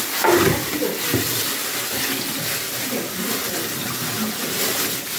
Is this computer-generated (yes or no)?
no